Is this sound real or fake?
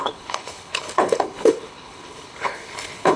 fake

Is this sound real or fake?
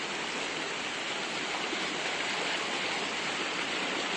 real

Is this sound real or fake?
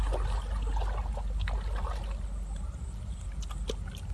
real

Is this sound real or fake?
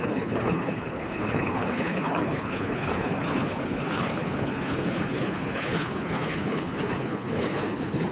fake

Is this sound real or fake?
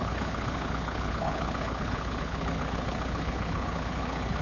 fake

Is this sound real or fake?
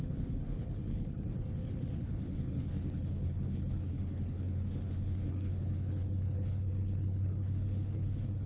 fake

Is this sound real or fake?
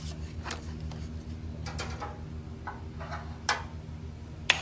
real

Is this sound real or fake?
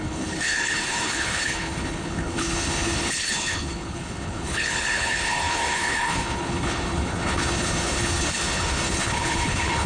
fake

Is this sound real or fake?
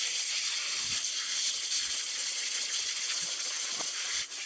real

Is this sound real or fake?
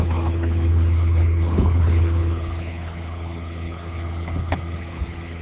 fake